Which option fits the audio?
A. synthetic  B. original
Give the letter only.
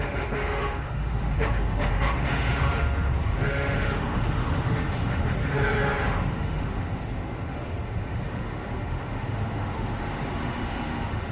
A